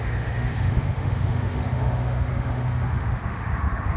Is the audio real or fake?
fake